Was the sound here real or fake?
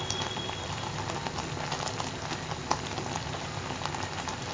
real